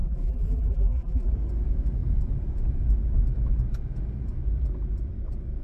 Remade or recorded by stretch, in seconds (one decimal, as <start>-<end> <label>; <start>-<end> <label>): 0.0-1.3 remade; 1.3-5.6 recorded